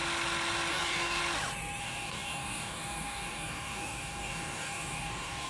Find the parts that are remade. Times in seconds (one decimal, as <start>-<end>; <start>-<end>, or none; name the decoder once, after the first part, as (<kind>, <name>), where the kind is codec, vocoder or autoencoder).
0.7-1.2 (codec, DAC); 1.8-5.5

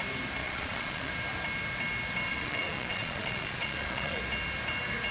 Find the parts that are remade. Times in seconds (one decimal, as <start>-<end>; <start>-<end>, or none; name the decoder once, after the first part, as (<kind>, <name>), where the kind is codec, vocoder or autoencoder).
0.4-1.1 (vocoder, Vocos); 2.3-4.2

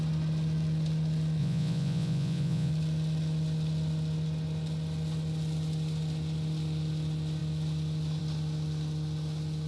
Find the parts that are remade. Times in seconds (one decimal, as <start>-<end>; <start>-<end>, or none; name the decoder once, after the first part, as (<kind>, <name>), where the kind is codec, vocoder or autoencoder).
1.4-2.7 (vocoder, Vocos)

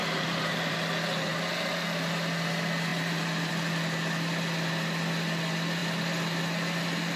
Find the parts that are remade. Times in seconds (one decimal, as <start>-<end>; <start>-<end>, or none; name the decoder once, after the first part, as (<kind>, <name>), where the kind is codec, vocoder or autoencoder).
0.0-0.7 (vocoder, BigVGAN v2); 2.9-3.5

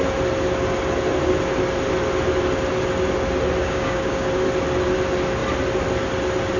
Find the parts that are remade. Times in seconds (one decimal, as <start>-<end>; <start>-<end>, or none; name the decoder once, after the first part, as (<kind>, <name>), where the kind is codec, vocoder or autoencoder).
3.6-4.3 (codec, DAC)

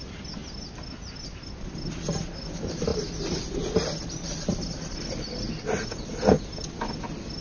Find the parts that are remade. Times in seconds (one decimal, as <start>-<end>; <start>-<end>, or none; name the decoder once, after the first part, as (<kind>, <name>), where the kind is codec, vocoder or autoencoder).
none